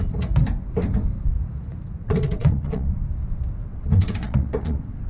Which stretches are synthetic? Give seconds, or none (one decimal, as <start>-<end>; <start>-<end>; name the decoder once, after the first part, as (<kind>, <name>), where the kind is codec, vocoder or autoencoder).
2.0-2.9 (vocoder, WaveNeXt); 3.7-5.1